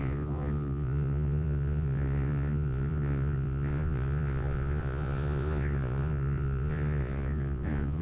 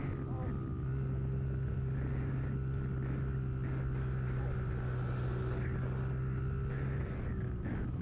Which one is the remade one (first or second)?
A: first